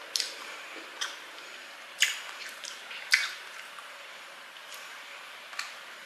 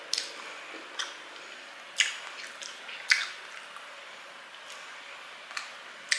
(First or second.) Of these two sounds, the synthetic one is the first